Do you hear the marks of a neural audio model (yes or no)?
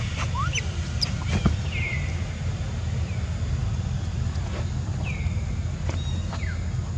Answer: no